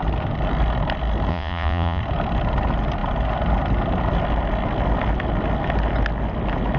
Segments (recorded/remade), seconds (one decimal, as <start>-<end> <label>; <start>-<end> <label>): 0.0-1.3 recorded; 1.3-2.0 remade; 2.0-6.8 recorded